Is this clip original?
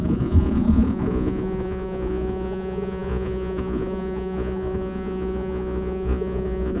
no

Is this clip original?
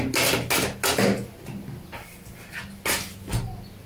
yes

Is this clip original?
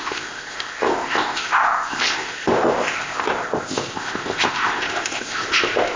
no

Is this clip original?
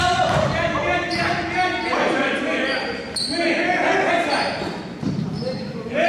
yes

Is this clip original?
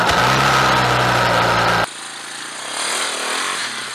yes